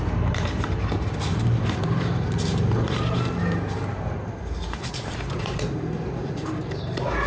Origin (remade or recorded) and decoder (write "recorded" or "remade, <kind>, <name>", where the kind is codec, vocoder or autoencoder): remade, vocoder, BigVGAN v2